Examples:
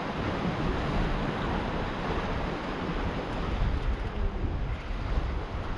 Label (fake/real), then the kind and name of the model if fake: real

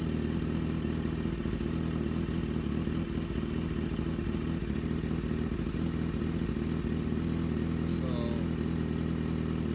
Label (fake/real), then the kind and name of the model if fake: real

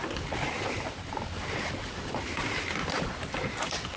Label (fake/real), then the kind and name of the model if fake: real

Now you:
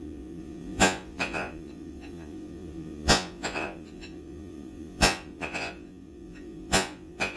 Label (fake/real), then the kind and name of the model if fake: fake, vocoder, Vocos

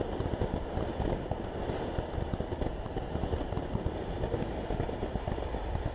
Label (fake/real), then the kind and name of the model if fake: real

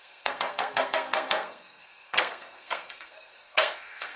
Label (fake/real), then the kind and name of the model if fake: fake, codec, SNAC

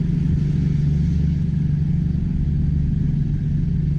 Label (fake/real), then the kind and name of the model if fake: real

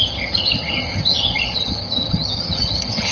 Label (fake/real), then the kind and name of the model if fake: fake, vocoder, HiFi-GAN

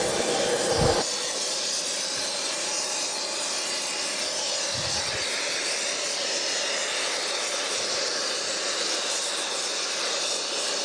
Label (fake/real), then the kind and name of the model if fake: real